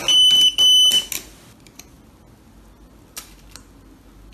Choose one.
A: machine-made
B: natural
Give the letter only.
B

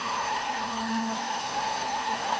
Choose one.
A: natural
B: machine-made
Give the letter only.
B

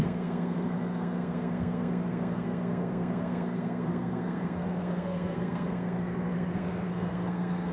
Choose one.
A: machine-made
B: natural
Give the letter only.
A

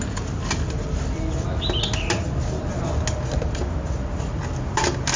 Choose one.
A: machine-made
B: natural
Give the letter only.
B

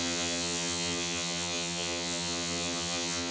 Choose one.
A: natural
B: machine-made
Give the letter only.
B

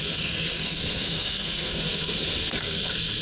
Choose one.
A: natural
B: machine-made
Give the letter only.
B